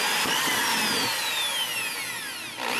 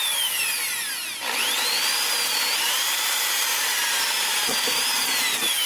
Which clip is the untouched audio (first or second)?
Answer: first